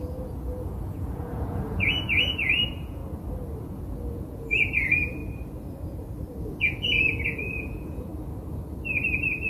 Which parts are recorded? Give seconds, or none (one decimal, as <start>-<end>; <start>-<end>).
3.0-3.6; 5.2-6.6; 8.1-9.5